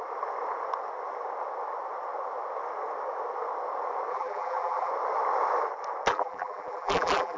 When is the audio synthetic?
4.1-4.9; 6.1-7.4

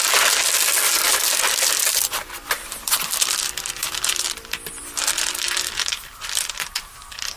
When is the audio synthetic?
1.1-2.9; 3.8-4.8

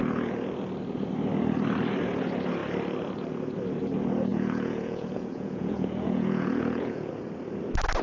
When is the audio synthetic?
4.3-7.1

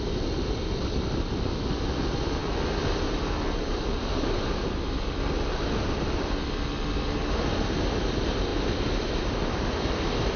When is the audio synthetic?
none

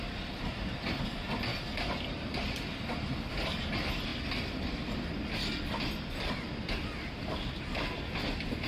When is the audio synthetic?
none